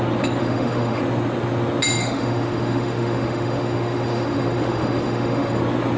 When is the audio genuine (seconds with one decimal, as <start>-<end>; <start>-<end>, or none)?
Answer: 0.0-0.4; 1.0-2.0; 5.6-6.0